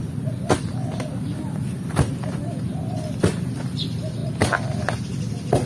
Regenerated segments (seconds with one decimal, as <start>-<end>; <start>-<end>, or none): none